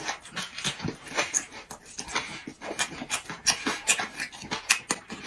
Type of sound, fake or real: real